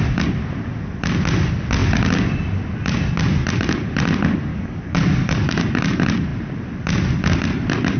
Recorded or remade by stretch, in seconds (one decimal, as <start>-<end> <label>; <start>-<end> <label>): 0.0-4.5 recorded; 4.5-5.4 remade; 5.4-8.0 recorded